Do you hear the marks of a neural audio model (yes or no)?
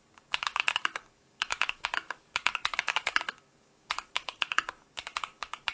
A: yes